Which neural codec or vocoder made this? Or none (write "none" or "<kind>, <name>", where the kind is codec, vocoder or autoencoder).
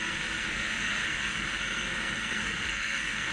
codec, SNAC